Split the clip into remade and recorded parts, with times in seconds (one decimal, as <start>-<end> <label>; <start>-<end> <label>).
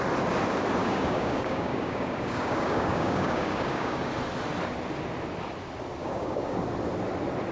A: 0.0-0.8 recorded; 0.8-4.1 remade; 4.1-6.0 recorded; 6.0-6.6 remade; 6.6-7.5 recorded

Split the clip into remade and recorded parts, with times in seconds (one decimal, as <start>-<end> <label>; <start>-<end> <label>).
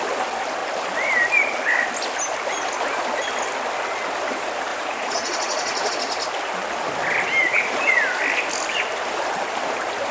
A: 0.0-4.7 recorded; 4.7-5.9 remade; 5.9-7.4 recorded; 7.4-8.0 remade; 8.0-10.1 recorded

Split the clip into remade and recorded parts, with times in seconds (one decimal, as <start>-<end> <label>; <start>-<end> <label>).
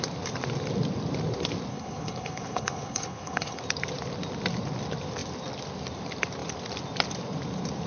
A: 0.0-1.7 recorded; 1.7-3.6 remade; 3.6-7.9 recorded